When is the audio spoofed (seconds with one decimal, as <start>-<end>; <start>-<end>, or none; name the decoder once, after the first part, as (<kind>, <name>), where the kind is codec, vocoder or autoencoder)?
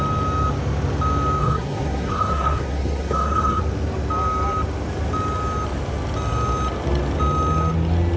1.4-3.6 (codec, SNAC)